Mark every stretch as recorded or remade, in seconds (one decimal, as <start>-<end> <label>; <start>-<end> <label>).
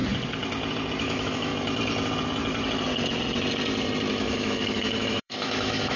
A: 0.0-1.0 recorded; 1.0-1.5 remade; 1.5-4.1 recorded; 4.1-6.0 remade